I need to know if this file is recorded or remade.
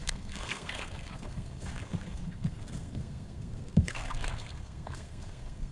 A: remade